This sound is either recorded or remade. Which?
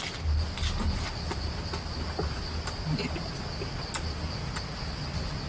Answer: recorded